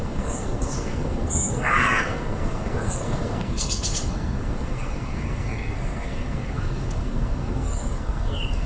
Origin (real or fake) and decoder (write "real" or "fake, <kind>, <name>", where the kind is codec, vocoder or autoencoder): fake, codec, SNAC